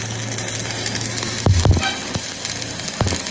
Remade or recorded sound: recorded